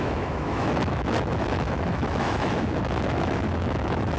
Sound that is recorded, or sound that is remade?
remade